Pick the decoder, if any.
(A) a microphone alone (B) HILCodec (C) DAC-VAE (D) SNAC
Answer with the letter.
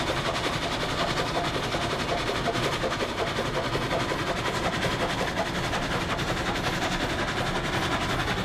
A